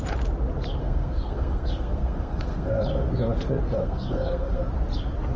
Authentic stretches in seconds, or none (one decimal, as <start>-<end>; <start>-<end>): 0.0-0.8; 2.8-3.8; 4.6-5.4

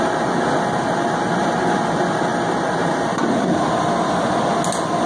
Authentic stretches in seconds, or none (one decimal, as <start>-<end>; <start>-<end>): 0.0-5.0

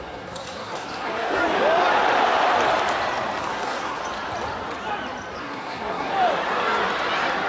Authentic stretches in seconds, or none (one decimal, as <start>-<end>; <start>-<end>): 1.4-3.4; 4.0-5.4; 6.1-7.5

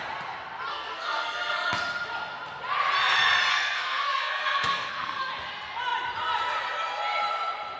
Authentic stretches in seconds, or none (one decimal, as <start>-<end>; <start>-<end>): 0.0-0.7; 1.7-3.5; 5.3-7.8

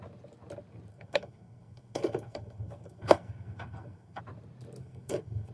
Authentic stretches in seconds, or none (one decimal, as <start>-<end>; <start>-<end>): 0.0-0.9; 4.2-4.8

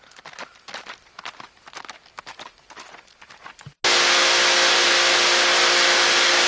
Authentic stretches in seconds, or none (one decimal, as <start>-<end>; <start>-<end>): 0.0-6.5

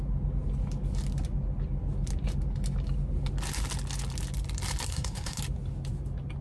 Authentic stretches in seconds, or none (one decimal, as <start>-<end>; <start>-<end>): 0.0-4.9; 5.4-6.4

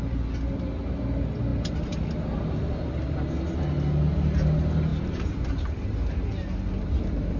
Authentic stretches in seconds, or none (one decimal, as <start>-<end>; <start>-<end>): 0.0-7.4